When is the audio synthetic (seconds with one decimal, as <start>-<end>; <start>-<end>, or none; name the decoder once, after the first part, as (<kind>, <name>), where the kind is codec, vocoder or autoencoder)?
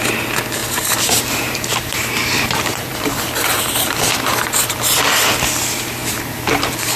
0.6-4.6 (vocoder, BigVGAN v2); 6.0-7.0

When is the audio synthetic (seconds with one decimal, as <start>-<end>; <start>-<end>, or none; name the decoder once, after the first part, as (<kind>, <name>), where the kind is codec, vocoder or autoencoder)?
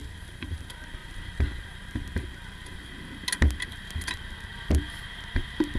0.0-0.6 (vocoder, BigVGAN v2); 1.0-2.9; 4.5-5.2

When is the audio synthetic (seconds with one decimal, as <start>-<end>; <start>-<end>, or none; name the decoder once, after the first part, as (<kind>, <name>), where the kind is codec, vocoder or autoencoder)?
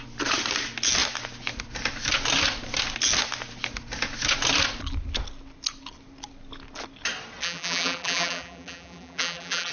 7.4-9.7 (vocoder, BigVGAN v2)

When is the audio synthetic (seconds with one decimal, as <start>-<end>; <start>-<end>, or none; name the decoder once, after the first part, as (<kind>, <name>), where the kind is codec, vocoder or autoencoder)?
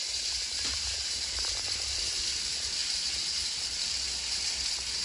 0.5-2.2 (vocoder, BigVGAN v2)